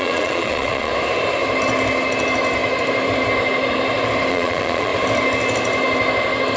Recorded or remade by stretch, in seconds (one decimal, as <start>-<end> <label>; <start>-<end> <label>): 0.0-0.9 remade; 0.9-4.3 recorded; 4.3-4.9 remade; 4.9-6.6 recorded